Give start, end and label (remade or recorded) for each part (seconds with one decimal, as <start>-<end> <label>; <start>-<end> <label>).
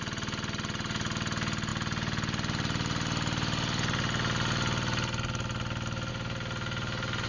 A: 0.0-7.3 recorded